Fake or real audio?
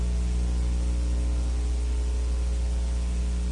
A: real